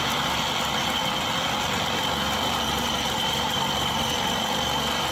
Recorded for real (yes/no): yes